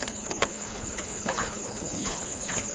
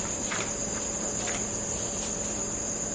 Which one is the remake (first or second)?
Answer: first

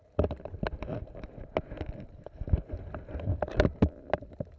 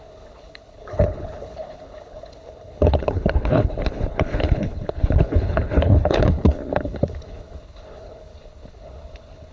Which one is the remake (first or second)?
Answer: second